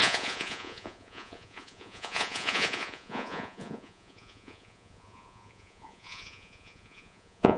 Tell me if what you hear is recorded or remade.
remade